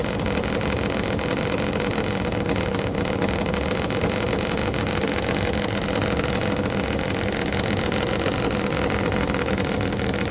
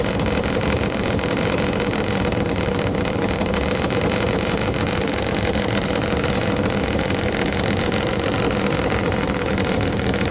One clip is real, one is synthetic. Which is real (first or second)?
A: first